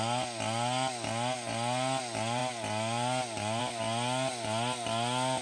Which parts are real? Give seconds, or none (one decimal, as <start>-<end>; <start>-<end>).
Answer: 0.0-5.4